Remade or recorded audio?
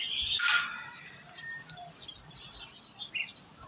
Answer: recorded